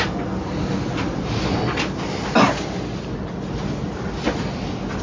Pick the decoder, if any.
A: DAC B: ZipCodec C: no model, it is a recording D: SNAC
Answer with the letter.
C